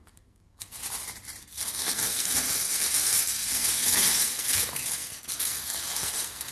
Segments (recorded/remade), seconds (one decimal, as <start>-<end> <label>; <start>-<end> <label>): 0.0-0.8 remade; 0.8-1.4 recorded; 1.4-6.5 remade